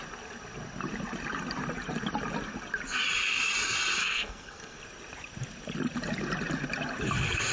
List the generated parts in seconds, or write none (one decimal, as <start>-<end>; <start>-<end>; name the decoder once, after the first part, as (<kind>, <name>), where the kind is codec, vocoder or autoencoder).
4.0-4.8 (codec, SNAC)